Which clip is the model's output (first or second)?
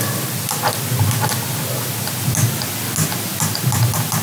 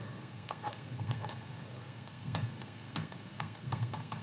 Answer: second